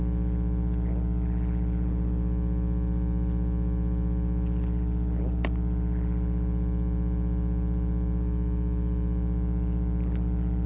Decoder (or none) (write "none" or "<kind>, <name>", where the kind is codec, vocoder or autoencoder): none